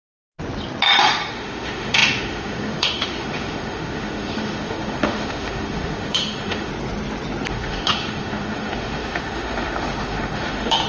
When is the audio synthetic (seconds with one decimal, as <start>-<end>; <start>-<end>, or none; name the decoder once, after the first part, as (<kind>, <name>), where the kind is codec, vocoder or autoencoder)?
1.3-6.7 (autoencoder, DAC-VAE); 7.5-10.9